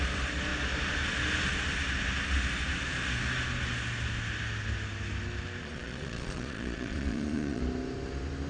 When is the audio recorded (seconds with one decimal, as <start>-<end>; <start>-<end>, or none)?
0.0-5.6; 7.6-8.5